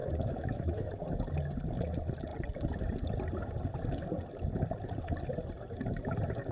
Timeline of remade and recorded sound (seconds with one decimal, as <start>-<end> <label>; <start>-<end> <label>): 0.0-1.0 remade; 1.0-6.5 recorded